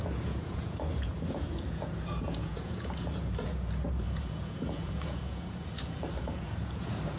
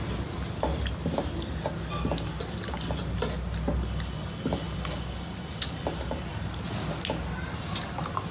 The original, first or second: second